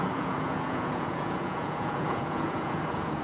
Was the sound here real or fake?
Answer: fake